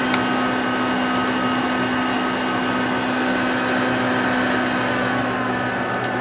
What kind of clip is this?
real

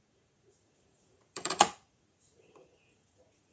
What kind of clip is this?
fake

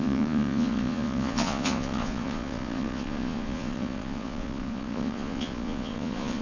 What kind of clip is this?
fake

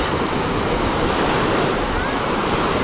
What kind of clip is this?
real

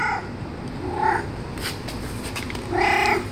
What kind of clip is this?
real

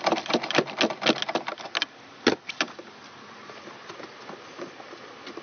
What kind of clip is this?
real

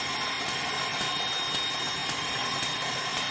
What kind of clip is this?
real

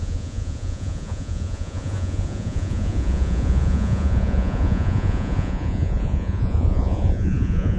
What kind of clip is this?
fake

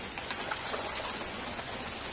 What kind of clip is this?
fake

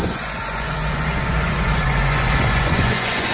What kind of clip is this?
fake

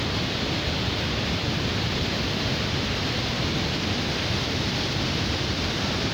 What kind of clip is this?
real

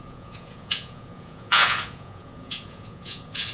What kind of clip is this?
fake